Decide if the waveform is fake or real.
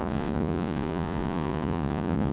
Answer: fake